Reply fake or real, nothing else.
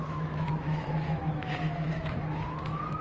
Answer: fake